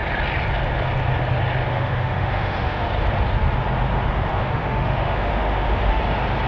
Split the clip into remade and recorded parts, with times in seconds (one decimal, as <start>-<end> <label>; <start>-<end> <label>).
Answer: 0.0-1.7 recorded; 1.7-2.9 remade; 2.9-4.3 recorded; 4.3-6.0 remade; 6.0-6.5 recorded